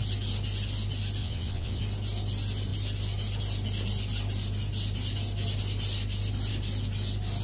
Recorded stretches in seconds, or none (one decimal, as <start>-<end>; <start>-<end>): 0.0-1.2; 1.8-7.4